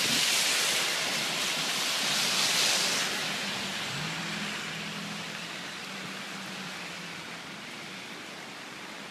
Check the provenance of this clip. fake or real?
real